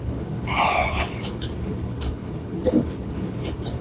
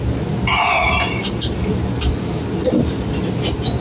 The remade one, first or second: first